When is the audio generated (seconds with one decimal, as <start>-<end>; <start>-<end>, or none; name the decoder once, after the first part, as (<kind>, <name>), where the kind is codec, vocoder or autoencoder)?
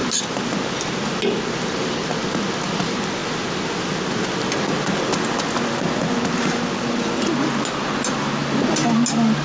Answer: none